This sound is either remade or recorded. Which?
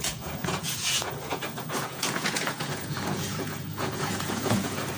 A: remade